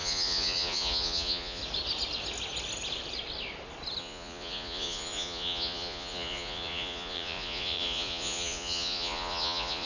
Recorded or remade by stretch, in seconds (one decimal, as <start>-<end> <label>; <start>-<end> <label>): 0.0-1.6 remade; 1.6-4.0 recorded; 4.0-9.9 remade